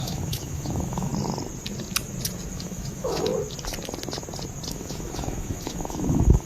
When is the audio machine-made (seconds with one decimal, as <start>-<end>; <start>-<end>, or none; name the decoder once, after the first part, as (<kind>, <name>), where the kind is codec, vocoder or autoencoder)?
0.0-1.1 (autoencoder, DAC-VAE); 2.5-3.3; 4.7-6.5